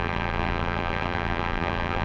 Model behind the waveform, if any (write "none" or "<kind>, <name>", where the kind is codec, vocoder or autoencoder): vocoder, BigVGAN v2